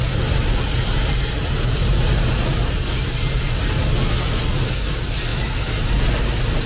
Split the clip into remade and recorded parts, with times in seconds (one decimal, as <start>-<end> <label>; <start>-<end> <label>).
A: 0.0-6.7 recorded